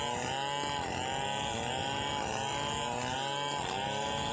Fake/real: real